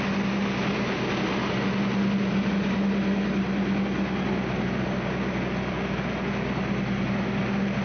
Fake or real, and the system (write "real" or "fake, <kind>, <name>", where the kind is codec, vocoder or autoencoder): real